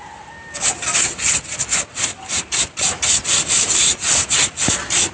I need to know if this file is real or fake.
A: real